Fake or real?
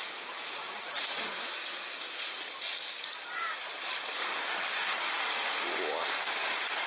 real